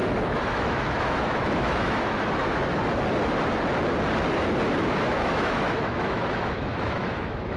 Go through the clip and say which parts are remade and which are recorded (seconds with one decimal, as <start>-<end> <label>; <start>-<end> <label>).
0.0-2.7 remade; 2.7-4.9 recorded; 4.9-7.6 remade